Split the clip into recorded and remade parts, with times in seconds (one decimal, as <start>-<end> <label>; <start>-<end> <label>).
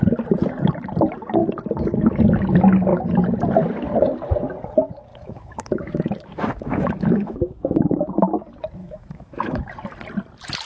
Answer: 0.0-5.1 recorded; 5.1-8.4 remade; 8.4-8.8 recorded; 8.8-9.7 remade; 9.7-10.7 recorded